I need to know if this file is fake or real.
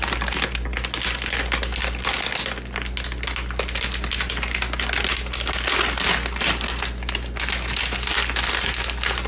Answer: real